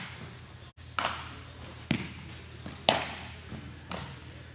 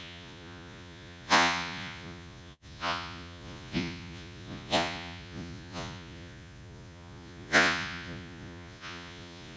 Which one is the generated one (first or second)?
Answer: second